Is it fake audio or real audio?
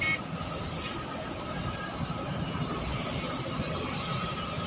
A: real